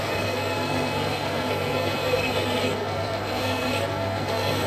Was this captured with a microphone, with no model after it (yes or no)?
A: no